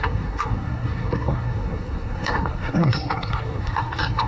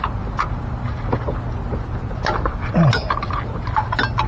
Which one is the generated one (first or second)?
first